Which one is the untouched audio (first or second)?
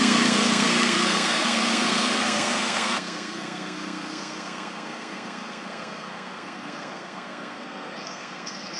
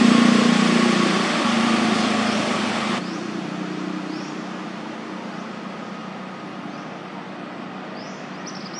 second